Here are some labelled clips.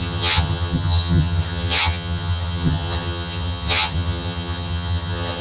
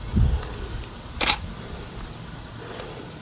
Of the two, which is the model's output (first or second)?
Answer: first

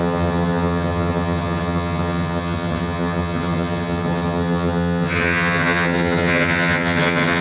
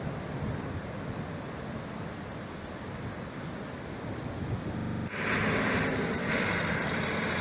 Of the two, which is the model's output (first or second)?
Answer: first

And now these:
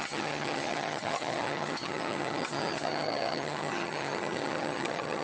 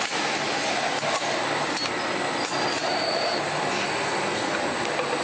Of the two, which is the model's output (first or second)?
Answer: first